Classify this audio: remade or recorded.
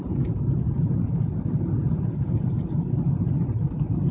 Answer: recorded